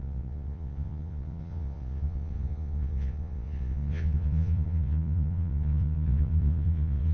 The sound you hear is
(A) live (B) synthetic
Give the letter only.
B